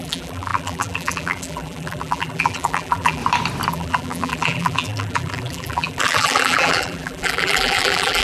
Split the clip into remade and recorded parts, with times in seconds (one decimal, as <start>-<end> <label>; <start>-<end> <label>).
0.0-3.2 remade; 3.2-3.7 recorded; 3.7-8.2 remade